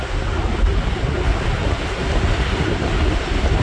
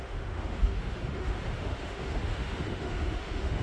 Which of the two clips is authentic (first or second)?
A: first